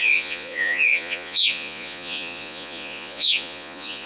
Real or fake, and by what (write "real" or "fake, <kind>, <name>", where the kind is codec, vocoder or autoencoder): fake, vocoder, Vocos